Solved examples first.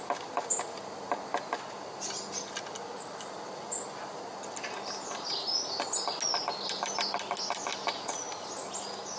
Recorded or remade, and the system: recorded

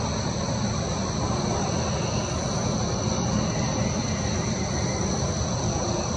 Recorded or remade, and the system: recorded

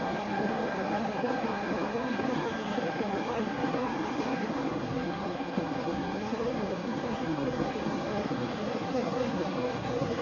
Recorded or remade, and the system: remade, codec, SNAC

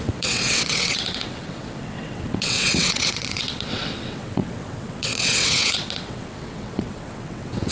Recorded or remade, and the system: remade, vocoder, WaveNeXt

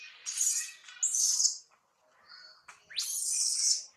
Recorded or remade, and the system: recorded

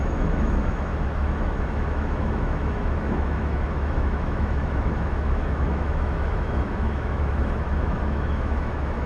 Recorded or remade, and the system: remade, autoencoder, DAC-VAE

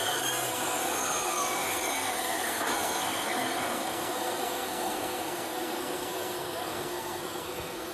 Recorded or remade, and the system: remade, codec, SNAC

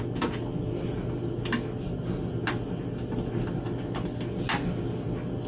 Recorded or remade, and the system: recorded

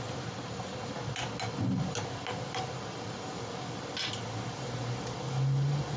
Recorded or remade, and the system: recorded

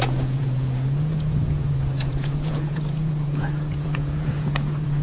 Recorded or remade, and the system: remade, vocoder, Vocos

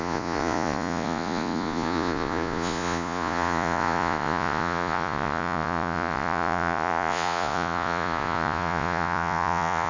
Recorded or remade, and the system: remade, vocoder, Vocos